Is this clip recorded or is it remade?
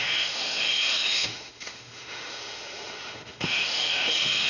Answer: remade